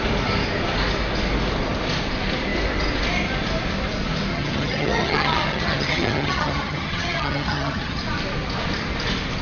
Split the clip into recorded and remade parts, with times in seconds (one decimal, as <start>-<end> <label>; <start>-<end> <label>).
0.0-4.3 recorded; 4.3-8.0 remade; 8.0-9.4 recorded